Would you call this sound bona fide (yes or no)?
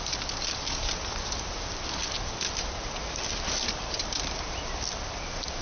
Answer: no